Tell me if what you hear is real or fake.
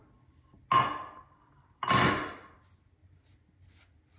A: real